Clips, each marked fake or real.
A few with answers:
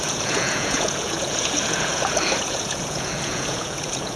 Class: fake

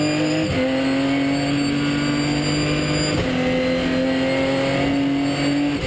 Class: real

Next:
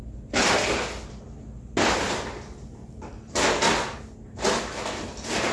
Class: real